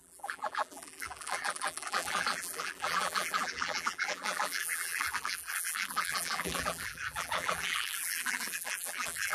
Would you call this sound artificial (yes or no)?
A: yes